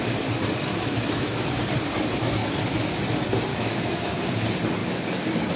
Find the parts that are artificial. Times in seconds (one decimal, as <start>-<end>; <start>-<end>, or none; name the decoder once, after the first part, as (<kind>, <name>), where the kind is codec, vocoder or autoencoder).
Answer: 0.7-1.5 (autoencoder, DAC-VAE); 3.5-4.2